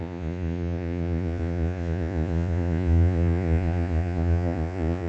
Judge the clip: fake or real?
fake